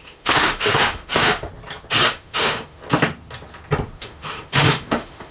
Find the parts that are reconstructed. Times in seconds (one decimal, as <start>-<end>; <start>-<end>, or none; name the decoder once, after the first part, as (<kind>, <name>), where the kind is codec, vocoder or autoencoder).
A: 0.0-1.5 (autoencoder, DAC-VAE); 2.1-2.8; 4.0-5.3